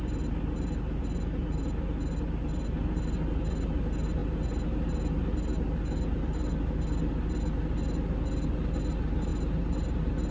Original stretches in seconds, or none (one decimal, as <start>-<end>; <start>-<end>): 0.0-10.3

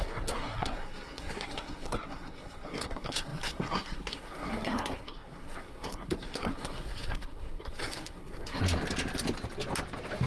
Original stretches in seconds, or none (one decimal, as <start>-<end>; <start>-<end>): 8.6-10.3

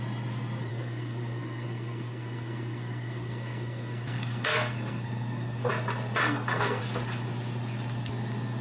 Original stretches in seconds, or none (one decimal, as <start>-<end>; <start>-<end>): 0.0-0.7; 5.7-6.2; 6.8-8.6

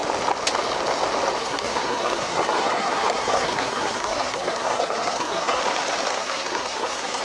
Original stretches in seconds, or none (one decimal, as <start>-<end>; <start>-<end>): 0.0-1.4; 5.6-6.1

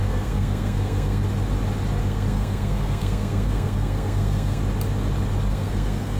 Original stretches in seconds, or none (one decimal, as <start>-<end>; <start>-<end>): 1.2-2.0; 4.6-5.5